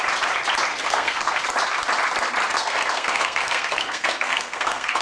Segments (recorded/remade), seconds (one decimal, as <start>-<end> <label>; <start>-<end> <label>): 0.0-0.7 recorded; 0.7-1.4 remade; 1.4-2.5 recorded; 2.5-5.0 remade